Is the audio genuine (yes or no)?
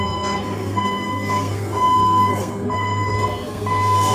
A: no